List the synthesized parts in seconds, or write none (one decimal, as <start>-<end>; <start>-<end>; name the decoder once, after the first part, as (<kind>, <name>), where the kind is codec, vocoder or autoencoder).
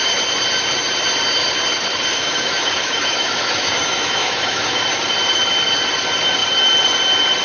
2.1-4.8 (autoencoder, DAC-VAE)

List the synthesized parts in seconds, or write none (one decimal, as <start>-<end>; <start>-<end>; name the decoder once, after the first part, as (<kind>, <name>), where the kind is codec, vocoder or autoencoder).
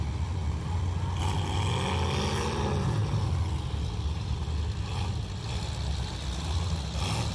none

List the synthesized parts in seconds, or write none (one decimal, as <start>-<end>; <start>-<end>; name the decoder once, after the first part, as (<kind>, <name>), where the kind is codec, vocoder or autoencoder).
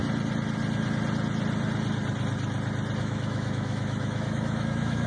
3.0-5.1 (autoencoder, DAC-VAE)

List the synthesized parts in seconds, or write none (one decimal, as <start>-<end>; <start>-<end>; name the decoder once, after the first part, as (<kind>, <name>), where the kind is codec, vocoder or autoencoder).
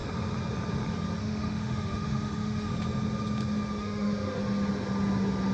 1.2-2.7 (autoencoder, DAC-VAE); 3.8-4.4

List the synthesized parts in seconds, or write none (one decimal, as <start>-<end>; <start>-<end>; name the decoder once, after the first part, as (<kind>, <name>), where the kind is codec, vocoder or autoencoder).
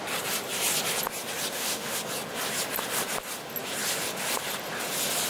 1.5-2.0 (autoencoder, DAC-VAE)